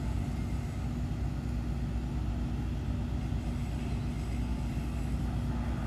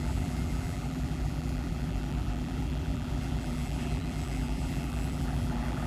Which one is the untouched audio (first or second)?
first